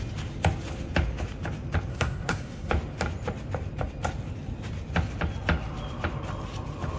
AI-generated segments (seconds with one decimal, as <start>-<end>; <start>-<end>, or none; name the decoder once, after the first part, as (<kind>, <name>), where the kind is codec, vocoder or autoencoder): 1.9-2.7 (codec, SNAC)